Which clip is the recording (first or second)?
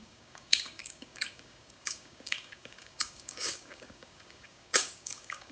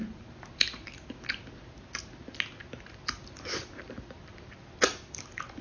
second